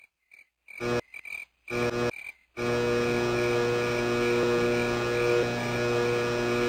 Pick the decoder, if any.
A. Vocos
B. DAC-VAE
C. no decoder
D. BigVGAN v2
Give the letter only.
C